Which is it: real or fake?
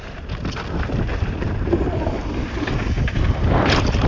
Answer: real